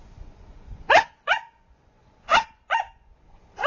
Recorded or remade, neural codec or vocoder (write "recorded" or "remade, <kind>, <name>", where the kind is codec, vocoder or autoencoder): remade, vocoder, Vocos